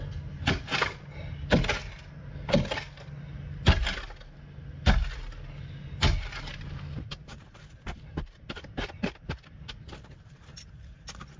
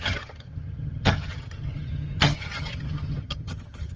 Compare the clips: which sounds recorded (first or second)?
first